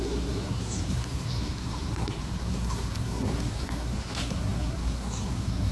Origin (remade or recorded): remade